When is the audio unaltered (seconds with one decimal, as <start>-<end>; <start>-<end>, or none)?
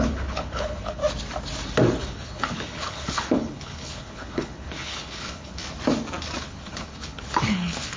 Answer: 1.0-2.0; 5.6-6.4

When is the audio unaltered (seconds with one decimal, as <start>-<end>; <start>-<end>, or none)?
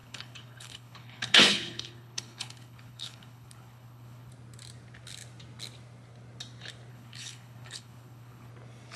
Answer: 4.3-6.9; 8.5-9.0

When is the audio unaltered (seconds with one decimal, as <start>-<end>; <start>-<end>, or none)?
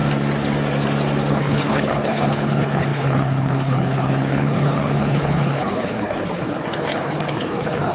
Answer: 0.0-1.3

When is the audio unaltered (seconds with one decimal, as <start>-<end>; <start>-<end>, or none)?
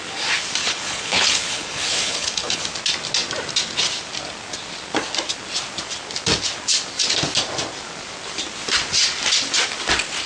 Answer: 0.0-0.6; 2.6-10.3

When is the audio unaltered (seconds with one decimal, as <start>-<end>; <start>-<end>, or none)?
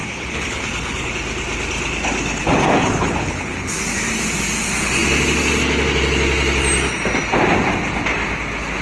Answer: 1.1-2.4; 3.8-8.8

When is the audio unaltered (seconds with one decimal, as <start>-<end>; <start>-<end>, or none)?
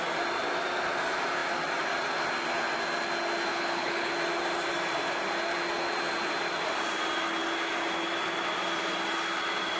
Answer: 0.0-3.5; 4.1-9.8